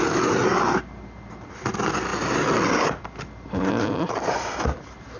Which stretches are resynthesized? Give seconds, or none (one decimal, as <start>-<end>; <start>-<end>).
none